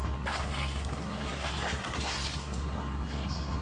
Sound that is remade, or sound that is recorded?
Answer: remade